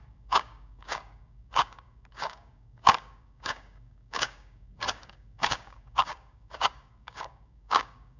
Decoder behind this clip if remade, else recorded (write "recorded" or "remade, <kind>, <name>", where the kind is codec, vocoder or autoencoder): remade, codec, DAC